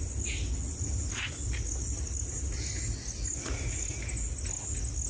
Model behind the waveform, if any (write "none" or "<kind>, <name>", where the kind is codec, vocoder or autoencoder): none